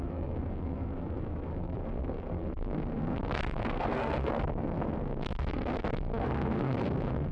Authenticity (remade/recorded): remade